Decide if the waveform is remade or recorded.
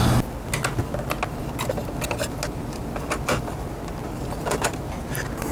recorded